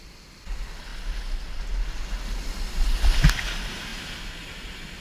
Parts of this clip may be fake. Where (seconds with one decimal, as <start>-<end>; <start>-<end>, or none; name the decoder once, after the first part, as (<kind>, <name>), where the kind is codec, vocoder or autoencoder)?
none

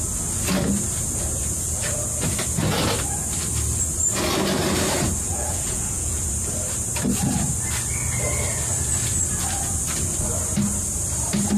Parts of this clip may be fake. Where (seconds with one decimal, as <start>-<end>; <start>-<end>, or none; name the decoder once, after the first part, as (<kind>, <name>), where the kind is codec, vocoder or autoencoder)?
5.3-6.2 (vocoder, Vocos)